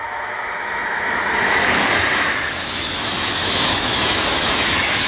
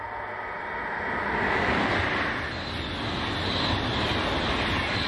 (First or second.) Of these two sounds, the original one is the second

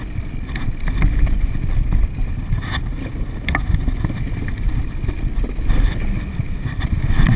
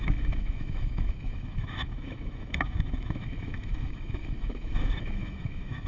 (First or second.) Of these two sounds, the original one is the first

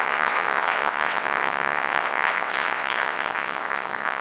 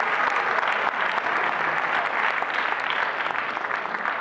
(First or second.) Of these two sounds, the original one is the second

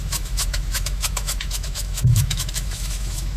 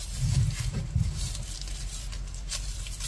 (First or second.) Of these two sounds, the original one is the second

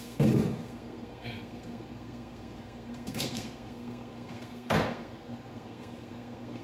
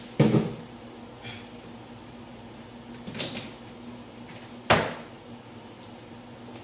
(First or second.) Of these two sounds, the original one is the second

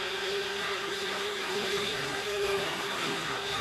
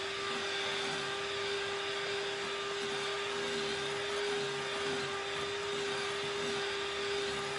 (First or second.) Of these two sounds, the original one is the second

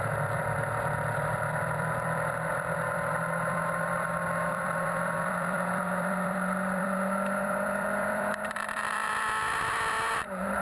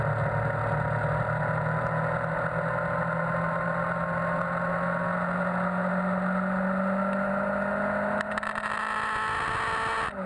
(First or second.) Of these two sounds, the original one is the second